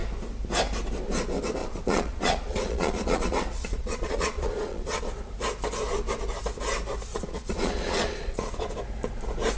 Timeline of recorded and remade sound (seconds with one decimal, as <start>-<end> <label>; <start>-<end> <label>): 0.0-1.6 recorded; 1.6-5.0 remade; 5.0-7.1 recorded; 7.1-8.7 remade; 8.7-9.6 recorded